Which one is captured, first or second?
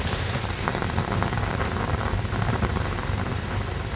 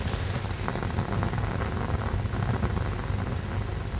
second